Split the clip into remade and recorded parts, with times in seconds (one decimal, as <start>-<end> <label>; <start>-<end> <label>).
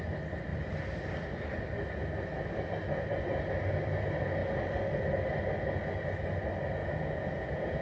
0.0-6.8 recorded; 6.8-7.8 remade